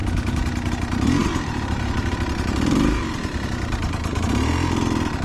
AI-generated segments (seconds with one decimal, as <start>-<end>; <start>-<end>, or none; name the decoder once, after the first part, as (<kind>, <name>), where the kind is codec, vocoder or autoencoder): none